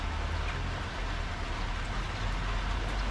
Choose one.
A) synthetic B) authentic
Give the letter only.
B